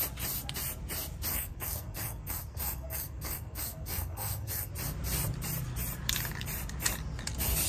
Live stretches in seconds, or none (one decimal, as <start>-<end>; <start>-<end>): 0.0-1.3; 4.7-7.7